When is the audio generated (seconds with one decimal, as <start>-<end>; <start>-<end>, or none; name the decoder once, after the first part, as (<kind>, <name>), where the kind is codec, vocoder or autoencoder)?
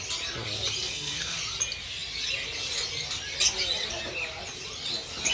0.8-1.4 (codec, SNAC)